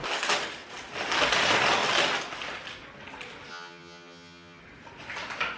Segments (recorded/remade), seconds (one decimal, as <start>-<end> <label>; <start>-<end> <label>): 0.0-3.5 recorded; 3.5-4.6 remade; 4.6-5.6 recorded